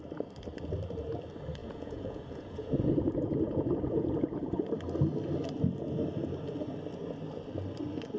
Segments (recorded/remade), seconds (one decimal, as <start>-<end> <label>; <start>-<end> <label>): 0.0-1.6 recorded; 1.6-4.7 remade; 4.7-8.2 recorded